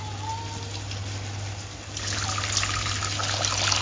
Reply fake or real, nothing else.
real